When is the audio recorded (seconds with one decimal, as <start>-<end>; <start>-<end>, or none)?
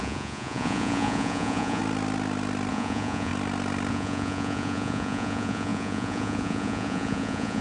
1.8-2.7; 3.3-3.9